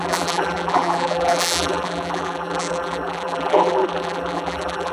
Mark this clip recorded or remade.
remade